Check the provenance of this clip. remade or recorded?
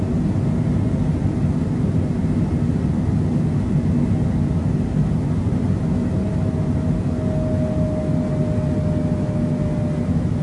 recorded